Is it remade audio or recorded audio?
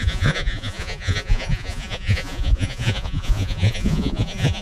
remade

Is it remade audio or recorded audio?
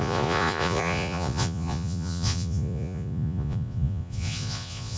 remade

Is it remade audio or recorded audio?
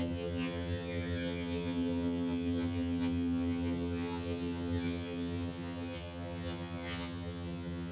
remade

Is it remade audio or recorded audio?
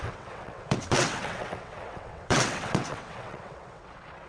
remade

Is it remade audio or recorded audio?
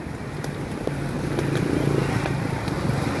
recorded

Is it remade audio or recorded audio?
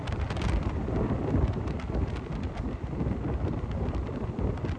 recorded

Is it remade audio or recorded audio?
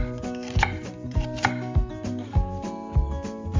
remade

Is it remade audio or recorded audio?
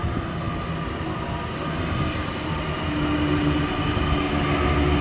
recorded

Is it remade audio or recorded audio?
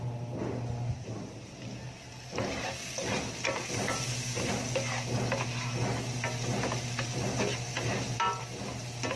recorded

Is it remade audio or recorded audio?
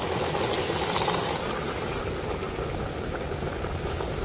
recorded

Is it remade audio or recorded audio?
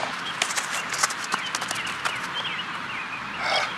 recorded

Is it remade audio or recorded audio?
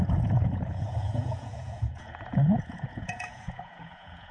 remade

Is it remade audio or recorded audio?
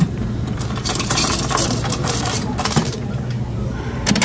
remade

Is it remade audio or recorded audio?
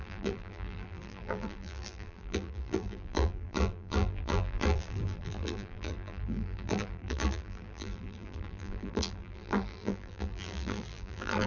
remade